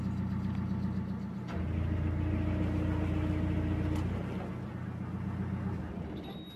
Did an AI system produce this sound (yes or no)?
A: no